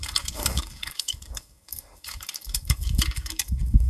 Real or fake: fake